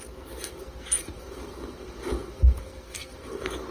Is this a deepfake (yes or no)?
yes